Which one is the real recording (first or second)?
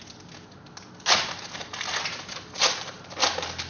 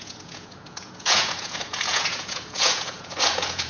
first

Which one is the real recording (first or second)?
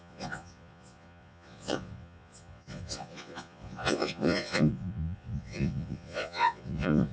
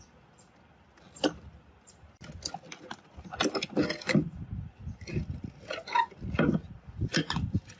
second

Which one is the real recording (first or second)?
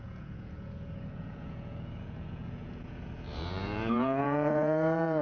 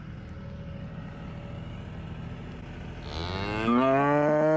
second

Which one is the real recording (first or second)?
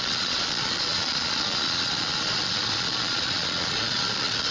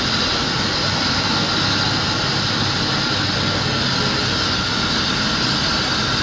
second